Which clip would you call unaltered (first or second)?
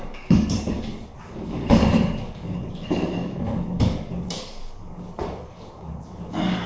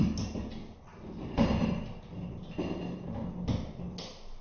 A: second